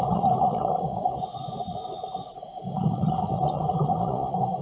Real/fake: fake